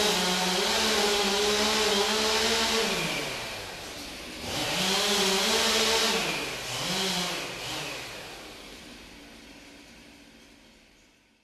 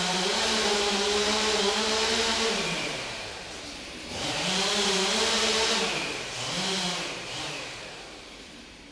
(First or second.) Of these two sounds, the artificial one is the second